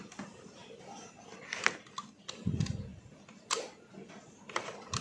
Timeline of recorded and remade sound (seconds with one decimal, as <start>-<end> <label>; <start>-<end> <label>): 0.0-5.0 recorded